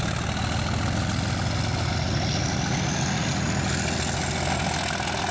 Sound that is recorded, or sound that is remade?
recorded